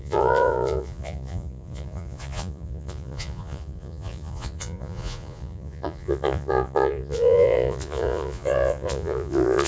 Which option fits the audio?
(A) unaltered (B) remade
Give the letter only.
B